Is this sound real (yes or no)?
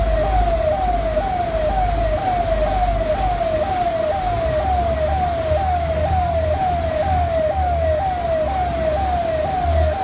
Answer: yes